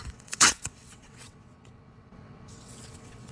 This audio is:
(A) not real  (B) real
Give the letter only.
A